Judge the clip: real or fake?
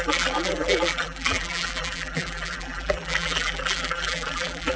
fake